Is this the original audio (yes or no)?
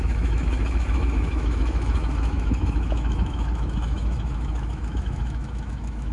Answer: no